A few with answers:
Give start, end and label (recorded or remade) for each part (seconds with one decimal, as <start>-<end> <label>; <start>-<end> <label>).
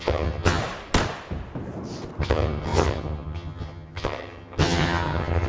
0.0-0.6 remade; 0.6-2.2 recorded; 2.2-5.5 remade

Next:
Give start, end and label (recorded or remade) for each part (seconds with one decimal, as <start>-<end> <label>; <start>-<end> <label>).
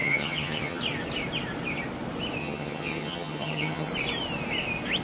0.0-0.8 remade; 0.8-2.4 recorded; 2.4-3.9 remade; 3.9-5.0 recorded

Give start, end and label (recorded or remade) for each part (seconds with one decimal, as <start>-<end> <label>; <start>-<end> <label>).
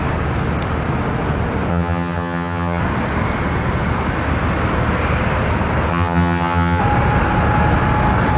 0.0-1.7 recorded; 1.7-2.8 remade; 2.8-5.9 recorded; 5.9-6.8 remade; 6.8-8.4 recorded